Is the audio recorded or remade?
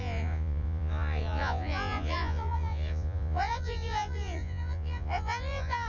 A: remade